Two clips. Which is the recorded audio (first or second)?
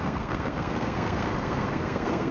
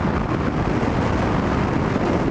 second